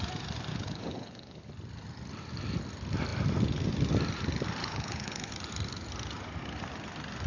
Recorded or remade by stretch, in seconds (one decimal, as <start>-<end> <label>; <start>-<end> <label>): 0.0-0.5 recorded; 0.5-1.5 remade; 1.5-4.6 recorded; 4.6-5.3 remade; 5.3-7.3 recorded